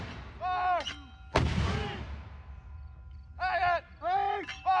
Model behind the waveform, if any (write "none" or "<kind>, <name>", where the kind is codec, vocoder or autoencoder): none